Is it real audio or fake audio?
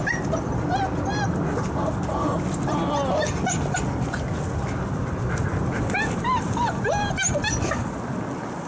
real